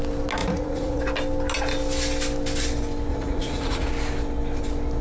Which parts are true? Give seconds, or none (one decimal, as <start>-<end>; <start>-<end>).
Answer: 0.0-0.4; 1.0-3.1; 3.9-5.0